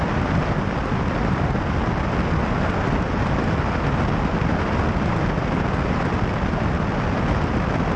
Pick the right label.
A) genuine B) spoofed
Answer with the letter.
A